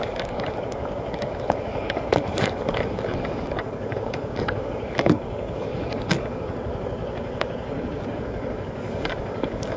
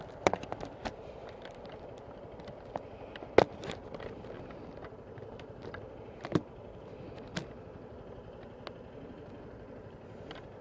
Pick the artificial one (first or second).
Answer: first